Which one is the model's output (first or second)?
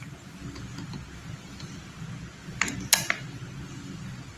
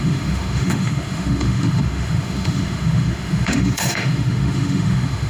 second